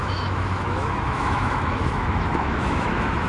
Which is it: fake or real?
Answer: fake